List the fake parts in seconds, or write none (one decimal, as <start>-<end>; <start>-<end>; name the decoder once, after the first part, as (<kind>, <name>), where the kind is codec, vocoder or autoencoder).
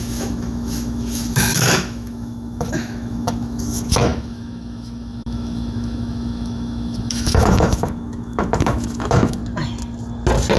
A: 0.0-9.4 (autoencoder, DAC-VAE)